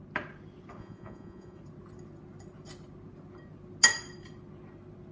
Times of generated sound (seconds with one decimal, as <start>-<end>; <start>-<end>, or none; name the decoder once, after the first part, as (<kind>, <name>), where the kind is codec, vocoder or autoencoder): 0.8-1.6 (vocoder, Vocos)

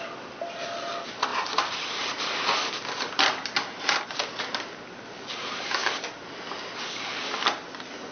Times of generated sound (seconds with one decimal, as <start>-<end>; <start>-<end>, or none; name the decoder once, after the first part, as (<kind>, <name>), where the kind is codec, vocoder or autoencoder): none

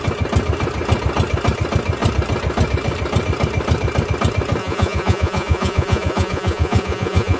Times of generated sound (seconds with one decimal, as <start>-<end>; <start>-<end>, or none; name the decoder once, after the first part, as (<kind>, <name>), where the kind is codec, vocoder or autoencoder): 4.6-7.4 (vocoder, Vocos)